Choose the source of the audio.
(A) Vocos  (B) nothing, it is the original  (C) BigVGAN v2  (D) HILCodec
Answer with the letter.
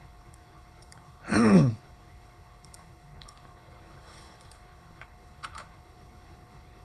D